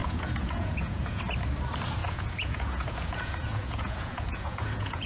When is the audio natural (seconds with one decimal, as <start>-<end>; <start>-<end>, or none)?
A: 1.2-2.0